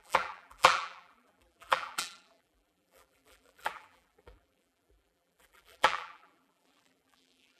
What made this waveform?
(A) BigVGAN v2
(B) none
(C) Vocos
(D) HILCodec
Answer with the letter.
A